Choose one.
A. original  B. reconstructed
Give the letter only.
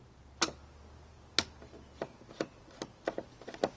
A